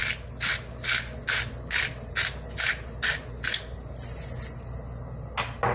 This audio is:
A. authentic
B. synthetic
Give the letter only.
A